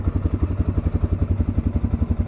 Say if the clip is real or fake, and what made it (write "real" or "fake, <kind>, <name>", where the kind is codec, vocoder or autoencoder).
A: real